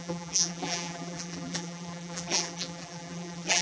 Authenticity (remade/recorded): remade